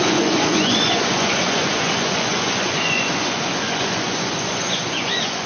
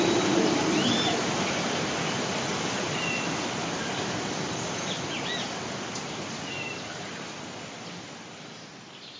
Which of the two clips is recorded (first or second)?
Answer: second